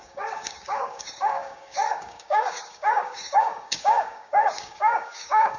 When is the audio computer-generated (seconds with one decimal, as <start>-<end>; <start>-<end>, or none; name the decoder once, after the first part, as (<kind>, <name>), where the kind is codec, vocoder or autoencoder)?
0.0-5.6 (codec, DAC)